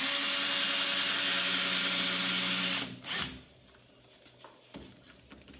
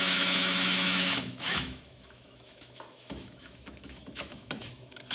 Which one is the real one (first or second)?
first